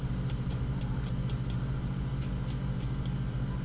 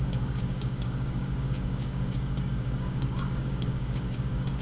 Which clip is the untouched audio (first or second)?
first